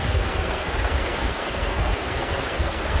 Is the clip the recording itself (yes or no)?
no